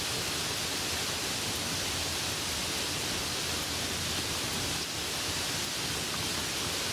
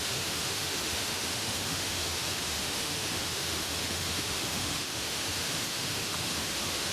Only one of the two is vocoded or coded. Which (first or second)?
second